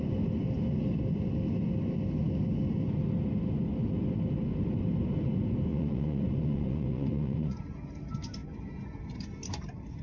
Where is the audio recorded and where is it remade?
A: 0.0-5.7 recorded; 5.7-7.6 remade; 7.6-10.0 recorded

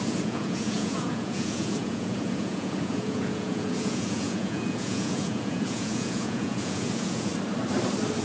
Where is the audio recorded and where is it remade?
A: 0.0-7.3 remade; 7.3-8.2 recorded

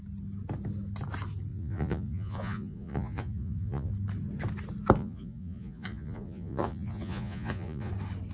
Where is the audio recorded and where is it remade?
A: 0.0-1.5 recorded; 1.5-3.9 remade; 3.9-5.0 recorded; 5.0-7.9 remade; 7.9-8.3 recorded